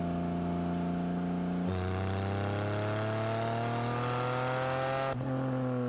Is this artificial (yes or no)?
no